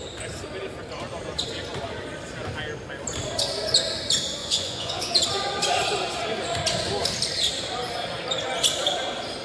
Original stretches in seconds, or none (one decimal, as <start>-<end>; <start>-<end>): 0.0-4.4; 5.1-9.4